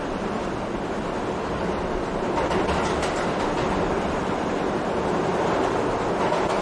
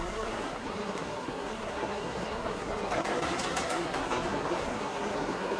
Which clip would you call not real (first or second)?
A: second